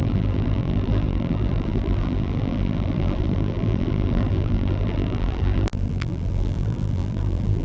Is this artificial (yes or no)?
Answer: yes